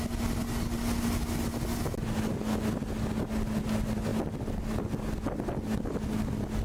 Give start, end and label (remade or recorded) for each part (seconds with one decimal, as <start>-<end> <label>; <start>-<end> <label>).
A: 0.0-6.6 recorded